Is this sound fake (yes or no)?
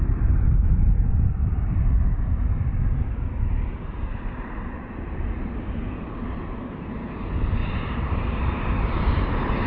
yes